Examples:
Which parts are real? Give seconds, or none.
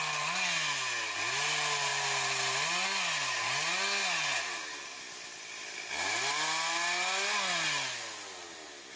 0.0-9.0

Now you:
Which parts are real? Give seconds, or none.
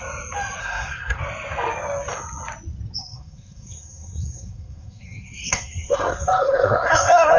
0.0-0.6; 1.2-3.0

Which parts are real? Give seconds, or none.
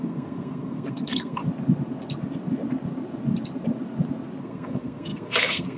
1.4-4.4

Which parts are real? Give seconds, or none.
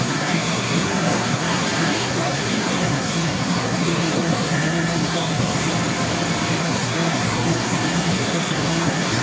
5.7-6.6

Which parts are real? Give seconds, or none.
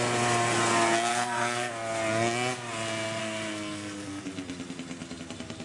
0.0-1.1; 1.7-3.2; 4.2-5.6